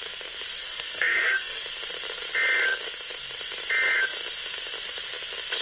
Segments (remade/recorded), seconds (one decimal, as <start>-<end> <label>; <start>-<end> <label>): 0.0-0.6 recorded; 0.6-1.6 remade; 1.6-5.6 recorded